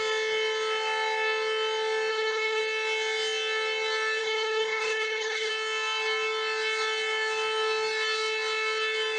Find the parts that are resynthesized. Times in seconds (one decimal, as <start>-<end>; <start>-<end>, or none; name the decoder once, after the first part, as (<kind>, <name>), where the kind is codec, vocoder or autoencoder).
2.1-2.6 (codec, HILCodec); 4.2-5.5

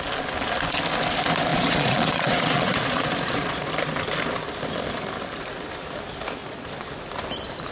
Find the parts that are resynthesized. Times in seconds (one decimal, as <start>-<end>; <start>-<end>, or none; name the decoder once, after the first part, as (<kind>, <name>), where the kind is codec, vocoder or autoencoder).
1.5-3.7 (vocoder, Vocos); 6.4-6.9

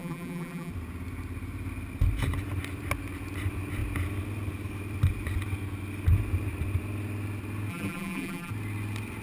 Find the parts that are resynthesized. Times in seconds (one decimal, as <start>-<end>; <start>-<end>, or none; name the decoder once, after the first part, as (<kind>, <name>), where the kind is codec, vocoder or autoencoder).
0.0-0.7 (vocoder, BigVGAN v2); 7.7-8.5